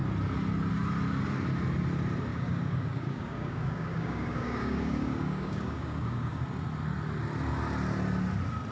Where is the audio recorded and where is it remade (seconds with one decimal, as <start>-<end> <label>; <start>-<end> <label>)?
0.0-2.3 recorded; 2.3-6.4 remade; 6.4-8.7 recorded